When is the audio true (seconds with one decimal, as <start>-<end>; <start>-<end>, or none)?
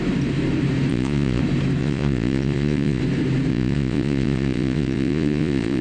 0.0-0.9; 1.4-1.8; 3.0-3.5